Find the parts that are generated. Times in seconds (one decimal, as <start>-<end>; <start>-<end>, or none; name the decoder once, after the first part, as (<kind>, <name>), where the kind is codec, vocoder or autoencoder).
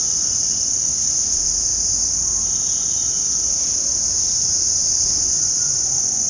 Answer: 0.0-1.7 (vocoder, Vocos); 5.2-6.3